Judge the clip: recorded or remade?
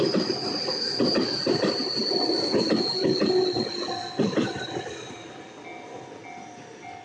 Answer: recorded